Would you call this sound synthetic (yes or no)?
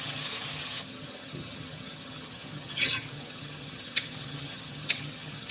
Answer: yes